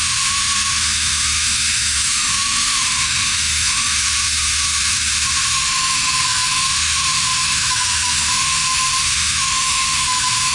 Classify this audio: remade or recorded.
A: remade